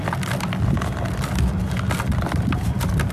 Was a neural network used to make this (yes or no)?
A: no